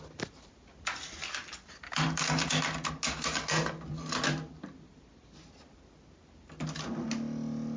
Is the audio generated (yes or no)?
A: no